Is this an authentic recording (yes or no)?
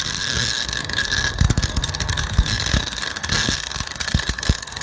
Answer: no